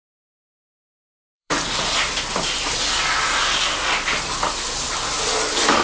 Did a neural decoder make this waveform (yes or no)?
yes